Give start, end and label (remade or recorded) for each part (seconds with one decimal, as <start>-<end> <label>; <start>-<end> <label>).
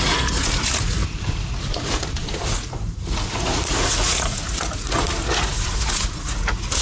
0.0-6.8 remade